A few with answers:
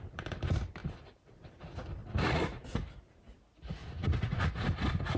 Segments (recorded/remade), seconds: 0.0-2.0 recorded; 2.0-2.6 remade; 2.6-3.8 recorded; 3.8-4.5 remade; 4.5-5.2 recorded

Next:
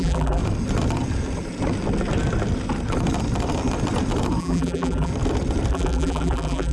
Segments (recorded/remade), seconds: 0.0-0.4 remade; 0.4-4.4 recorded; 4.4-5.1 remade; 5.1-5.7 recorded; 5.7-6.7 remade

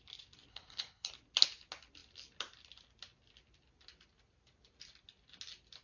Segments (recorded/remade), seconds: 0.0-0.5 recorded; 0.5-1.1 remade; 1.1-5.8 recorded

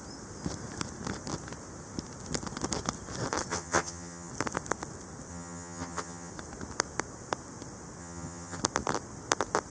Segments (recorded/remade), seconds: 0.0-3.5 recorded; 3.5-4.3 remade; 4.3-5.3 recorded; 5.3-6.3 remade; 6.3-8.0 recorded; 8.0-8.6 remade; 8.6-9.7 recorded

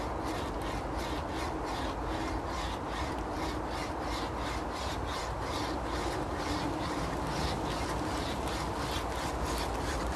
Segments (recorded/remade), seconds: 0.0-10.2 recorded